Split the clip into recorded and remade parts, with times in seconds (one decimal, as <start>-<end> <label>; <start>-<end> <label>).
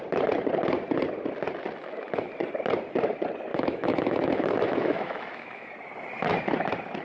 0.0-1.8 recorded; 1.8-2.3 remade; 2.3-3.5 recorded; 3.5-5.7 remade; 5.7-7.0 recorded